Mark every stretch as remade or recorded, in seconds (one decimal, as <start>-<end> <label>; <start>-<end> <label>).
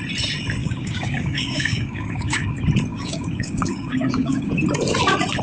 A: 0.0-0.6 recorded; 0.6-2.5 remade; 2.5-2.9 recorded; 2.9-4.6 remade; 4.6-5.4 recorded